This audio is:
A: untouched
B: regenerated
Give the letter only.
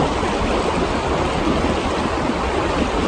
A